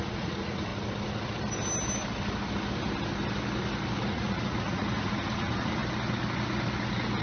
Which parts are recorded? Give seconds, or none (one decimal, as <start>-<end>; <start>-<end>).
0.7-4.1; 5.8-7.2